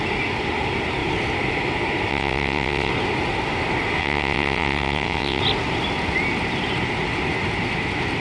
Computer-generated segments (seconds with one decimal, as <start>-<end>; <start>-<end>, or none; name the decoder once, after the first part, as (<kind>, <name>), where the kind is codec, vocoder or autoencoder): 2.1-2.9 (vocoder, WaveNeXt); 4.0-5.4